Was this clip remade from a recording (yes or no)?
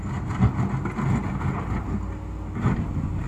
no